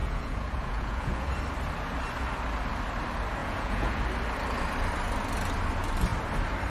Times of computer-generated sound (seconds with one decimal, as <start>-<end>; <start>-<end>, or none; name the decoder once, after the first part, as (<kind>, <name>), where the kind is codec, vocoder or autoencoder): 0.0-1.3 (vocoder, Vocos); 3.4-4.0